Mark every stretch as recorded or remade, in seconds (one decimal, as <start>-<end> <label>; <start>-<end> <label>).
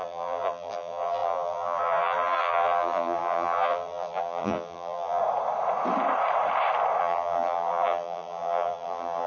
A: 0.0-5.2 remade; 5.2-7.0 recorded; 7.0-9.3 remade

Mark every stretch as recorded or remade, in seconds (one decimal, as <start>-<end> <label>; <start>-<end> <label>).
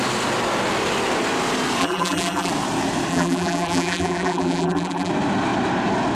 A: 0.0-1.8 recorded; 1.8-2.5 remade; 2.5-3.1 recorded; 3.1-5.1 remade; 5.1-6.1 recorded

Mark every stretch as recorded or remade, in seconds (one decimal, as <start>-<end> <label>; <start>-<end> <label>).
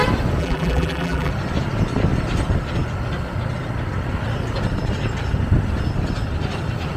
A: 0.0-0.4 recorded; 0.4-1.3 remade; 1.3-7.0 recorded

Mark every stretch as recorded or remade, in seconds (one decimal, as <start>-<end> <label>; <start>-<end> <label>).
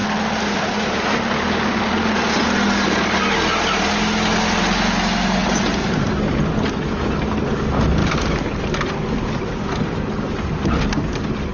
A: 0.0-8.0 recorded; 8.0-8.6 remade; 8.6-11.5 recorded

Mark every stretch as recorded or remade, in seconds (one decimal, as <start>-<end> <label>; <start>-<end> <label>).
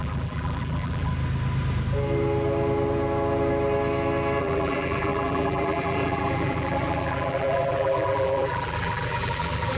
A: 0.0-1.1 remade; 1.1-4.4 recorded; 4.4-9.8 remade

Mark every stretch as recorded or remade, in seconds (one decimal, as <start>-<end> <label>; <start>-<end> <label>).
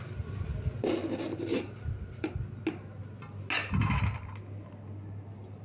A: 0.0-1.5 recorded; 1.5-2.3 remade; 2.3-5.6 recorded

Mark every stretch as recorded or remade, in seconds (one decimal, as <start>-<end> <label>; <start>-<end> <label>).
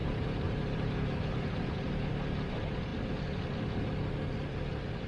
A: 0.0-2.1 remade; 2.1-5.1 recorded